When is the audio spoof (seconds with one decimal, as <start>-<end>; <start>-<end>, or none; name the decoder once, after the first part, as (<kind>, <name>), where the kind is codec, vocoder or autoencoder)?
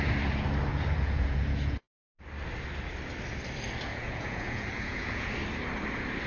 0.7-2.0 (vocoder, Vocos); 3.9-5.3